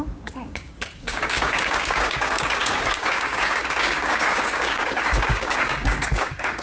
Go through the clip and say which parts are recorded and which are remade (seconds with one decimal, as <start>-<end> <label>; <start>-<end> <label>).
0.0-6.6 remade